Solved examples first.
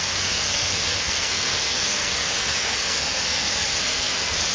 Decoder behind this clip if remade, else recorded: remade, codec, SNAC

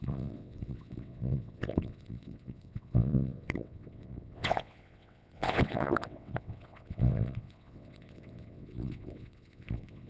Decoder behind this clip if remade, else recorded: remade, vocoder, WaveNeXt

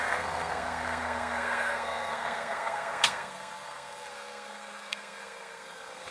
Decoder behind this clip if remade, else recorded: remade, codec, SNAC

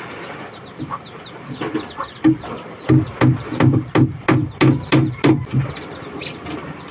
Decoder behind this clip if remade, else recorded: recorded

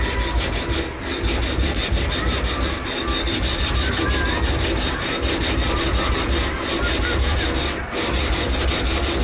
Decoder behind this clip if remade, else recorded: recorded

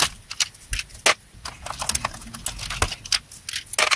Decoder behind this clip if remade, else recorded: recorded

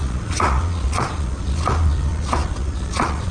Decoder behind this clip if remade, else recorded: remade, vocoder, Vocos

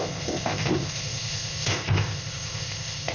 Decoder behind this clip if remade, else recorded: remade, codec, ZipCodec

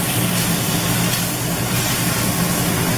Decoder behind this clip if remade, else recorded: recorded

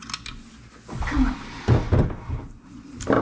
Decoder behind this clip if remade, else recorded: recorded